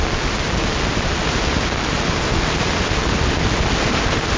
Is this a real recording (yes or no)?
yes